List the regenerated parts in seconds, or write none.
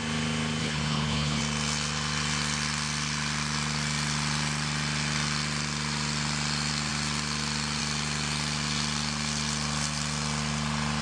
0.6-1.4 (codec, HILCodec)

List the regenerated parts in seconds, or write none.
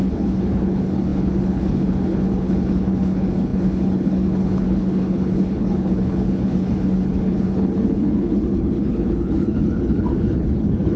0.0-11.0 (codec, HILCodec)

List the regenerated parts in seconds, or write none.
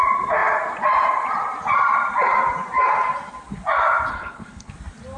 4.1-4.7 (codec, HILCodec)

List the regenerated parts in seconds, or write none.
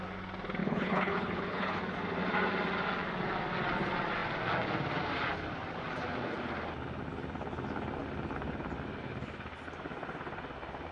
0.6-1.8 (codec, HILCodec)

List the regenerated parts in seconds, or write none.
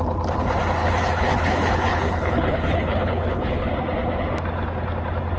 0.8-3.7 (codec, HILCodec)